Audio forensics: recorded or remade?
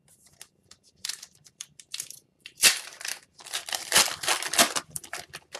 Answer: remade